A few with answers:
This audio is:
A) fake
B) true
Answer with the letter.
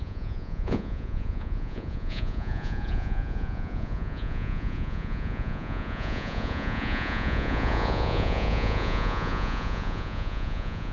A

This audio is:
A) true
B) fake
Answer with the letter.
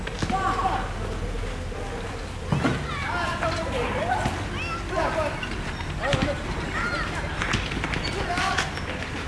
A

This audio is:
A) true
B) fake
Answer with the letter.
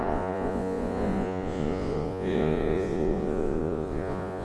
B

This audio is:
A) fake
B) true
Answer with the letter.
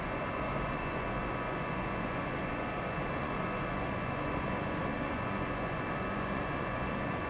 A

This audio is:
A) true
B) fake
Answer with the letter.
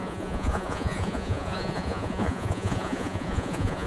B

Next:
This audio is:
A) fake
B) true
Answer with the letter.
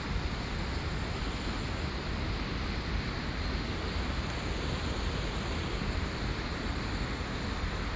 B